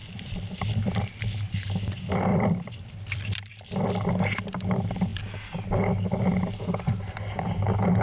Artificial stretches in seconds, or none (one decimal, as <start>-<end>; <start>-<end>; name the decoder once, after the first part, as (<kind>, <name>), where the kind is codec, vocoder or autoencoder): 0.0-1.0 (vocoder, BigVGAN v2); 2.3-3.6